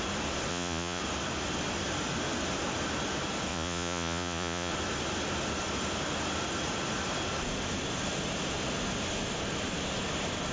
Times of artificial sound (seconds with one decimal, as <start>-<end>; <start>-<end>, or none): 0.5-1.0; 3.5-4.7